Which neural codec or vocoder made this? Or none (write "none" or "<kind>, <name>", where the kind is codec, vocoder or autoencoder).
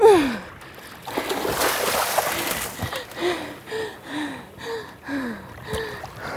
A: none